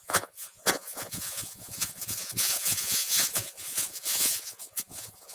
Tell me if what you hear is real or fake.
fake